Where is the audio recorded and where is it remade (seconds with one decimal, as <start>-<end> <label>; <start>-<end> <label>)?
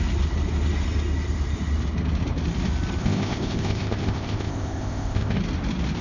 0.0-3.0 recorded; 3.0-5.4 remade; 5.4-6.0 recorded